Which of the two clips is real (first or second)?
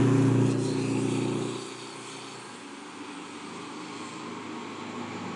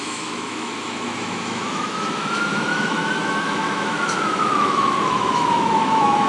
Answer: first